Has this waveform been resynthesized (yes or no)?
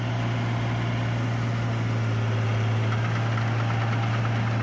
no